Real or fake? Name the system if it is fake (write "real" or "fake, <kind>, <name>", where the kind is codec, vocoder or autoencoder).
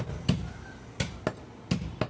real